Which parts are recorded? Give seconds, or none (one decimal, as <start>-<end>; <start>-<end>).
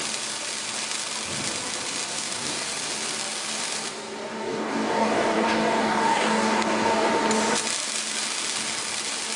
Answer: 0.0-2.1; 2.7-4.3; 7.1-9.4